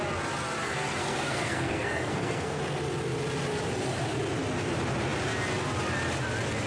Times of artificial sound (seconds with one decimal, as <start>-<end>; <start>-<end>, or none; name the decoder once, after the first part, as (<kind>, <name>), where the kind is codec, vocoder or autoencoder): 0.6-2.6 (codec, SNAC)